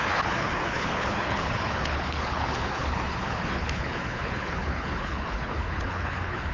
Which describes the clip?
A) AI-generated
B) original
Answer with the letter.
A